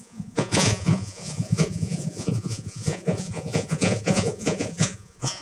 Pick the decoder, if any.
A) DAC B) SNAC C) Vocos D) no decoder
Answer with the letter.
C